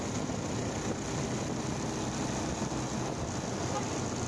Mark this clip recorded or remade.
recorded